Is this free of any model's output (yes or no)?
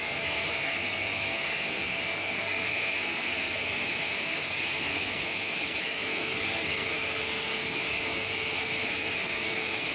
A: no